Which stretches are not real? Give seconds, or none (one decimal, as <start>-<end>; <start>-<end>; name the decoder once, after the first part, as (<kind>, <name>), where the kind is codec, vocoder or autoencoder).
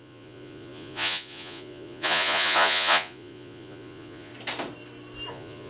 0.0-4.3 (vocoder, Vocos); 5.3-5.7